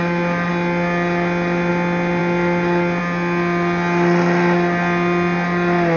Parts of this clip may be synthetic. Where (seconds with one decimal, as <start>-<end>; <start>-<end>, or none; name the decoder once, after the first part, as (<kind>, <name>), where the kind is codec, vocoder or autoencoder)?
none